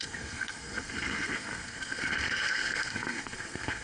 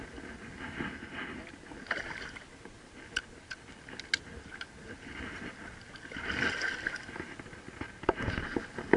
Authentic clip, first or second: second